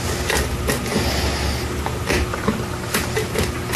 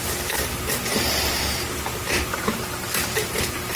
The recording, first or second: first